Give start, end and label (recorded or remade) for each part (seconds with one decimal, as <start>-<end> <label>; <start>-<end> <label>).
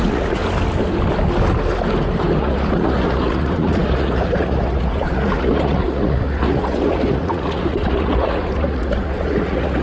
0.0-0.4 remade; 0.4-2.4 recorded; 2.4-9.8 remade